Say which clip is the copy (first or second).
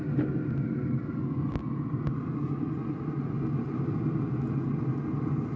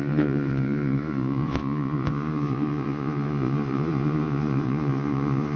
second